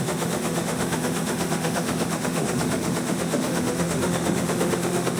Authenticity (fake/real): fake